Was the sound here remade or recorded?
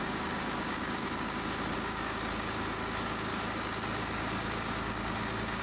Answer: remade